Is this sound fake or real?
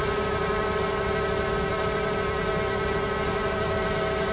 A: real